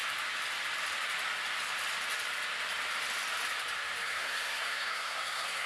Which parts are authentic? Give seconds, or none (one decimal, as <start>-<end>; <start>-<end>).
0.0-4.0